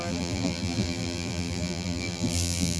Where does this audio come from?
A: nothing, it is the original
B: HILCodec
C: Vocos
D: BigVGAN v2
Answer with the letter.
D